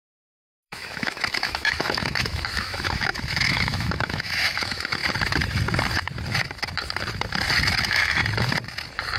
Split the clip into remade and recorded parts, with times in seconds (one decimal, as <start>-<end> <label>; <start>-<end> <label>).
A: 0.0-5.0 remade; 5.0-7.8 recorded; 7.8-8.2 remade; 8.2-9.2 recorded